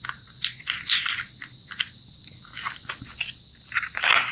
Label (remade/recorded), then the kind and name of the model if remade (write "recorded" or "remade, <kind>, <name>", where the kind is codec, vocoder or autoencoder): recorded